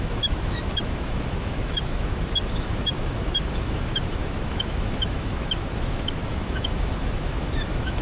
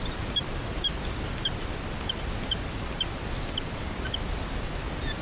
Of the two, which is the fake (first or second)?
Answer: first